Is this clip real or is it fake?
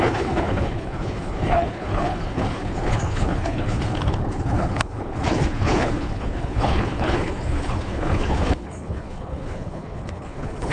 fake